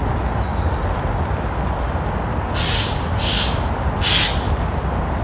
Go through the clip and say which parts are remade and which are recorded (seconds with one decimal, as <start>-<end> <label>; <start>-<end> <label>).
0.0-5.2 recorded